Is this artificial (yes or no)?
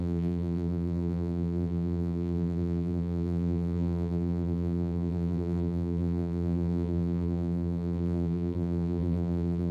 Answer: yes